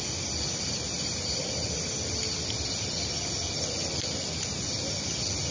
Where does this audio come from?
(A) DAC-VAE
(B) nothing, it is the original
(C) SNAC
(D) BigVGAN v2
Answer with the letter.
B